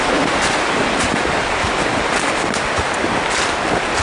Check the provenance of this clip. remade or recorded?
recorded